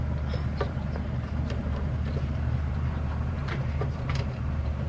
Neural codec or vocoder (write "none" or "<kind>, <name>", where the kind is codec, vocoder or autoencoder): vocoder, BigVGAN v2